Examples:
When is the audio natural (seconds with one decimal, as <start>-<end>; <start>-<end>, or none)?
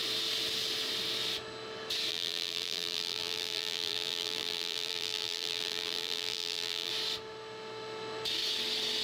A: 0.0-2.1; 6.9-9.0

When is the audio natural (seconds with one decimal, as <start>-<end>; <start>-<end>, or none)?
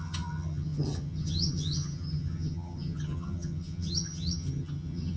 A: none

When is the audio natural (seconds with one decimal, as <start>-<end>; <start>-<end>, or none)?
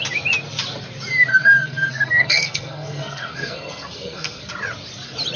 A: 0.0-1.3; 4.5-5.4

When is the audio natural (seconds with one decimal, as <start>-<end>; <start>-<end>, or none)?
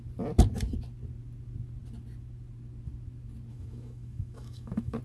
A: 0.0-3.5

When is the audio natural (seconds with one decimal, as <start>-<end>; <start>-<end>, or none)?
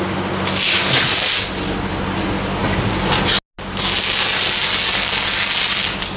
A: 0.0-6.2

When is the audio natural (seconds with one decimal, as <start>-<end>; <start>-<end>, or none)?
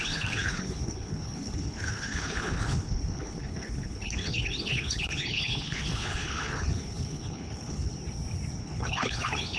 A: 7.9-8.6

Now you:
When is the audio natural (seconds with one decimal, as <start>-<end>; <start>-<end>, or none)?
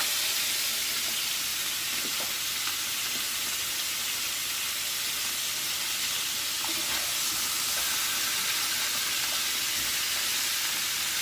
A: 0.0-1.5; 2.3-11.2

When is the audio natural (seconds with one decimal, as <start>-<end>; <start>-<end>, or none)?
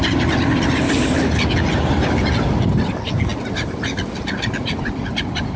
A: 0.0-5.6